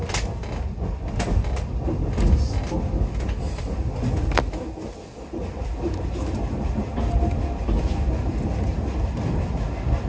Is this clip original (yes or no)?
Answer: yes